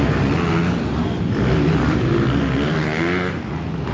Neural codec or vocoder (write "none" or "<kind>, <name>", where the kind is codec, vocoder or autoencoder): none